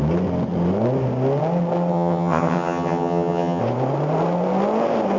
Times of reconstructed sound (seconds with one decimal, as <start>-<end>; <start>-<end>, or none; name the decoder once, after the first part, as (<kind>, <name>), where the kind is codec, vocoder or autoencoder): 1.9-3.6 (vocoder, HiFi-GAN)